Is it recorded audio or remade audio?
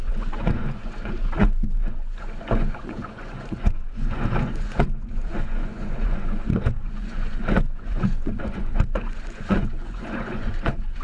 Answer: remade